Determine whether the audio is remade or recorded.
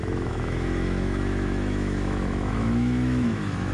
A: remade